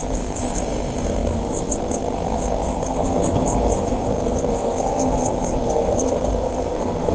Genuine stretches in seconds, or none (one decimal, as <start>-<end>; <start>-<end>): none